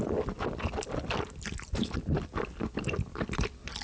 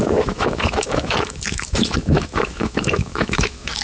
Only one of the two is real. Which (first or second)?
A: first